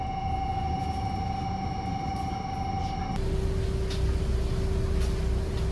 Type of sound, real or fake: real